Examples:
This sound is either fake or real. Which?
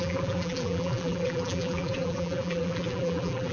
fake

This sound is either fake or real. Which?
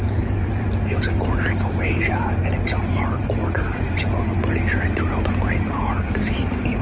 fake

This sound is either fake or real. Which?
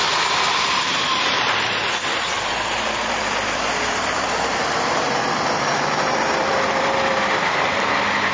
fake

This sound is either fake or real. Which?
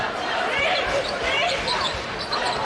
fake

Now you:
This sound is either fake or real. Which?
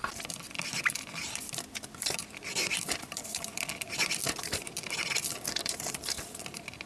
fake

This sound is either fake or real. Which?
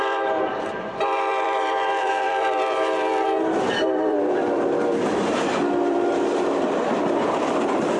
fake